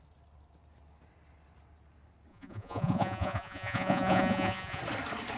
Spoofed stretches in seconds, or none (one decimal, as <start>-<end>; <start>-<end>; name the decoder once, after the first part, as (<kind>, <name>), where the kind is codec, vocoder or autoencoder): 2.3-4.8 (vocoder, Vocos)